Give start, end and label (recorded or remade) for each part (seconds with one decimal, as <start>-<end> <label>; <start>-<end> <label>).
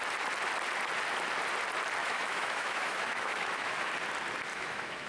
0.0-2.0 recorded; 2.0-3.9 remade; 3.9-4.5 recorded; 4.5-5.1 remade